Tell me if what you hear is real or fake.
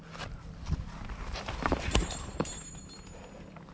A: real